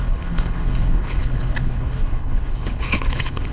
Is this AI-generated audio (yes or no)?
yes